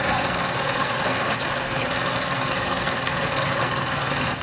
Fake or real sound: fake